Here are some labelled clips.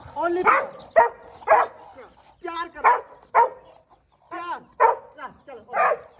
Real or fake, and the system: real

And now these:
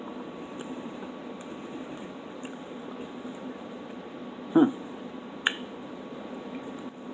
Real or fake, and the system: fake, vocoder, BigVGAN v2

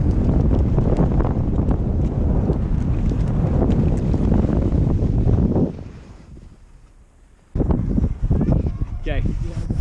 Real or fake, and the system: fake, vocoder, BigVGAN v2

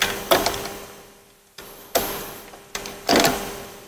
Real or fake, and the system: real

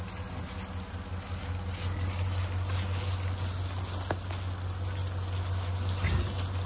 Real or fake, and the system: real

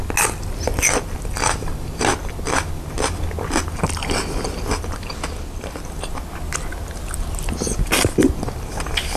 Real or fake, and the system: real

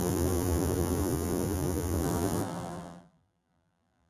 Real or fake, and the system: fake, vocoder, BigVGAN v2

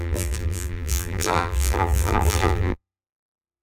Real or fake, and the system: fake, vocoder, BigVGAN v2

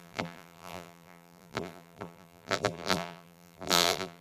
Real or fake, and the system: fake, vocoder, BigVGAN v2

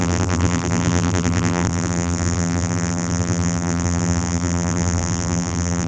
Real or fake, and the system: fake, vocoder, BigVGAN v2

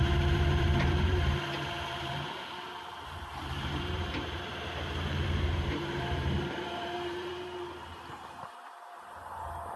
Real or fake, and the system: fake, vocoder, BigVGAN v2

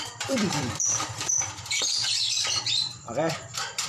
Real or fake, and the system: fake, vocoder, BigVGAN v2